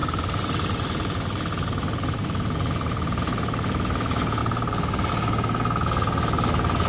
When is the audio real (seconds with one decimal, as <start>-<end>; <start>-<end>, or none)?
0.0-2.2; 3.2-4.4; 5.1-6.9